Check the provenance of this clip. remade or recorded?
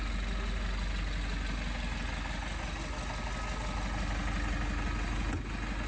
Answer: recorded